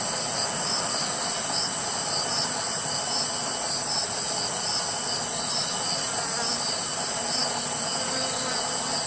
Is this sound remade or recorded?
recorded